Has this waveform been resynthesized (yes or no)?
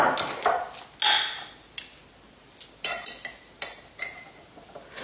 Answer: no